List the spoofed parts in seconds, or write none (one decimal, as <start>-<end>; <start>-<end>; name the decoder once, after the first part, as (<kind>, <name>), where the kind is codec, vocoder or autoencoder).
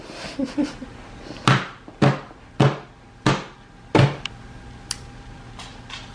none